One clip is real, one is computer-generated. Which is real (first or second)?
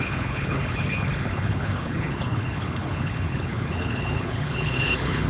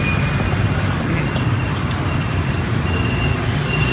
second